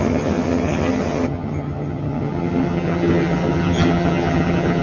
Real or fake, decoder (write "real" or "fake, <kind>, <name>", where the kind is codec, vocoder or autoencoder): fake, vocoder, HiFi-GAN